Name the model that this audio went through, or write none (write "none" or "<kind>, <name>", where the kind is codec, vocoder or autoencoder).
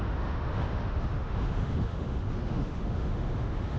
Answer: autoencoder, DAC-VAE